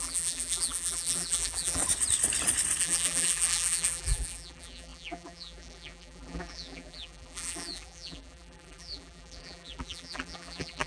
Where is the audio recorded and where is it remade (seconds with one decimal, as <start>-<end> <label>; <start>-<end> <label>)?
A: 0.0-1.8 remade; 1.8-2.8 recorded; 2.8-10.9 remade